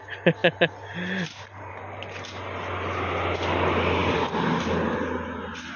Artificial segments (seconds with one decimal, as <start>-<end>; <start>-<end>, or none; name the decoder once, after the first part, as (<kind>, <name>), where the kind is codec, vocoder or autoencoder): none